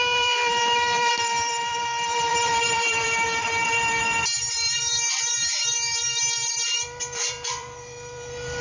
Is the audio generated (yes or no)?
yes